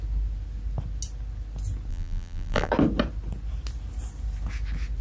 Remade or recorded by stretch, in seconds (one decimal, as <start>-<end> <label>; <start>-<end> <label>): 0.0-1.9 recorded; 1.9-2.7 remade; 2.7-5.0 recorded